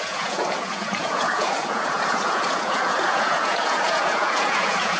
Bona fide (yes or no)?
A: no